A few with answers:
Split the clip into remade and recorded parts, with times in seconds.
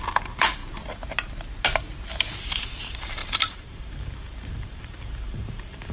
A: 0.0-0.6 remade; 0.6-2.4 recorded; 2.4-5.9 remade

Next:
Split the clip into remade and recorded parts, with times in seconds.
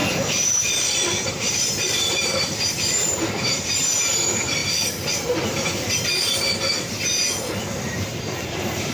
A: 0.0-3.9 remade; 3.9-8.1 recorded; 8.1-8.9 remade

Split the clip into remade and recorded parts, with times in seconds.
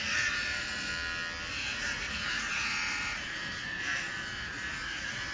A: 0.0-0.9 remade; 0.9-1.5 recorded; 1.5-5.3 remade